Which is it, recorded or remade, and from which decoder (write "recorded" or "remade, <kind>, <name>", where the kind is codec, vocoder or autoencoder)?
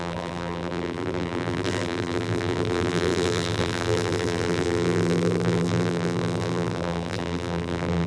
remade, vocoder, BigVGAN v2